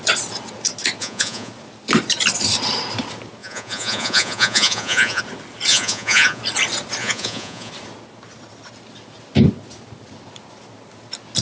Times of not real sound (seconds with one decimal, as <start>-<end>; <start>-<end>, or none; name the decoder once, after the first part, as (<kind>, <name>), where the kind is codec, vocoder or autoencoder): 1.0-1.5 (vocoder, Vocos); 3.4-5.2; 5.7-6.4; 7.0-7.7